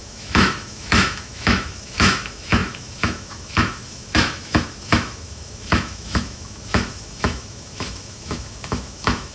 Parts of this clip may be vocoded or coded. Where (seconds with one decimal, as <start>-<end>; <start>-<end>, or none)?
0.0-9.3